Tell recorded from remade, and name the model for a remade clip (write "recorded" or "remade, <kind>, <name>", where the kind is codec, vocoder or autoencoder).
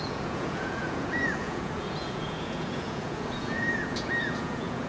remade, vocoder, Vocos